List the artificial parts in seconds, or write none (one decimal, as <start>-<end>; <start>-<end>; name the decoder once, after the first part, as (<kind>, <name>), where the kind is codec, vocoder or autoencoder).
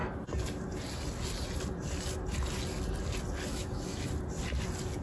3.5-4.1 (autoencoder, DAC-VAE)